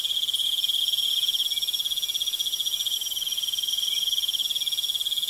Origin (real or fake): real